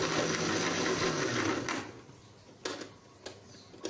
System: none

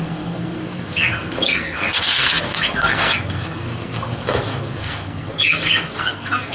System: codec, SNAC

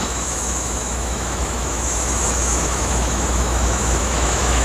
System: autoencoder, DAC-VAE